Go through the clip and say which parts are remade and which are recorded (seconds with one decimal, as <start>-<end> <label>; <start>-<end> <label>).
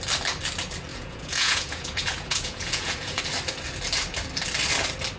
0.0-0.9 recorded; 0.9-3.2 remade; 3.2-5.2 recorded